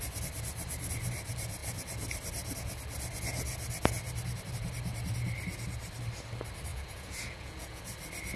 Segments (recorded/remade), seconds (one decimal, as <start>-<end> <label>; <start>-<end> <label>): 0.0-6.7 recorded; 6.7-7.8 remade; 7.8-8.4 recorded